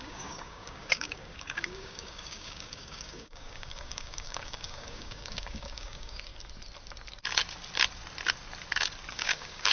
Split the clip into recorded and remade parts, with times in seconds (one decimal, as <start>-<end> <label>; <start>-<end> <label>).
0.0-6.3 remade; 6.3-9.1 recorded; 9.1-9.7 remade